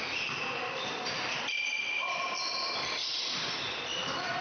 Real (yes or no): no